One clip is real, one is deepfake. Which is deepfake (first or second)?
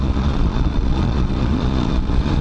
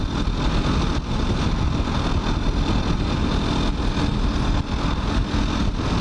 first